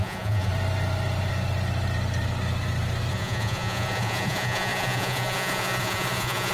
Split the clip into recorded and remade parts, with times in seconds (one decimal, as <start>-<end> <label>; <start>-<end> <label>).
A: 0.0-0.5 remade; 0.5-3.1 recorded; 3.1-6.5 remade